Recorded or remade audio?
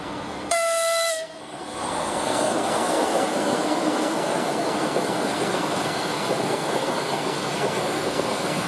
remade